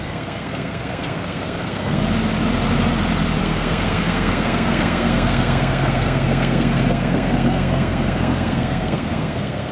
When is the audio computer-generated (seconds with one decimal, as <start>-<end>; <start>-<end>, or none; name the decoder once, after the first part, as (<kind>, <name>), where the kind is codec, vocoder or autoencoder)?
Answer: 0.0-2.0 (codec, SNAC); 3.4-9.7